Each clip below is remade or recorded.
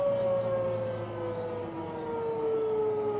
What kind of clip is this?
recorded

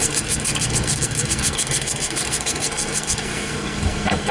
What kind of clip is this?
remade